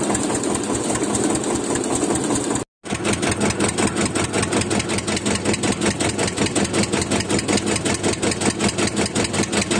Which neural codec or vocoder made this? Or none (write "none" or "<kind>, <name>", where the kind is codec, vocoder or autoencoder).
none